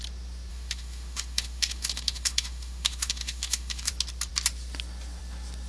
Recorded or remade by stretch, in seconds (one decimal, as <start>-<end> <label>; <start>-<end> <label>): 0.0-0.5 recorded; 0.5-3.9 remade; 3.9-5.7 recorded